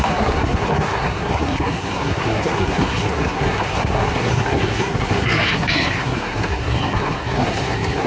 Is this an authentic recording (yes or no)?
no